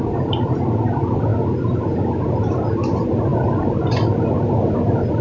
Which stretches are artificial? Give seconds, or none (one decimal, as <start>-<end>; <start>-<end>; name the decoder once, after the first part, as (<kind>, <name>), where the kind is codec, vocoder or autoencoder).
3.3-4.3 (vocoder, BigVGAN v2)